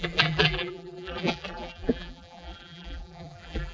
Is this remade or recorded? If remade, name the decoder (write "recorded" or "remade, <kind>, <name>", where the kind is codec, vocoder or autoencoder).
remade, vocoder, BigVGAN v2